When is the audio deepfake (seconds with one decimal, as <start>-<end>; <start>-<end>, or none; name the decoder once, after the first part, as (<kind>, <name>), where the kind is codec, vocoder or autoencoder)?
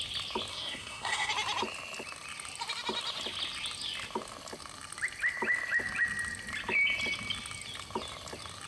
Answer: 0.5-1.3 (codec, SNAC)